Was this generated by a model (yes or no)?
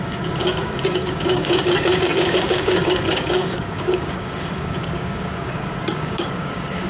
yes